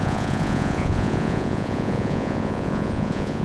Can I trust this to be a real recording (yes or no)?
no